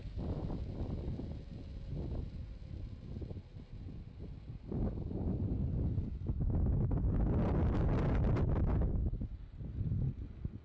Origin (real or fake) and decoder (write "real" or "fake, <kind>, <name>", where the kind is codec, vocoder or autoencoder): real